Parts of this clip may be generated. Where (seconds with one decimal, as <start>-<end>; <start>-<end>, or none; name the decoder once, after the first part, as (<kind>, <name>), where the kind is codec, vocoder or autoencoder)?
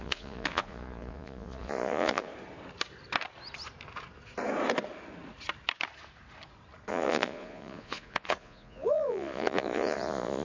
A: 0.0-2.3 (vocoder, Vocos); 6.9-10.4